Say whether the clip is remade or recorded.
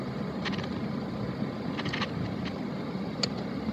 recorded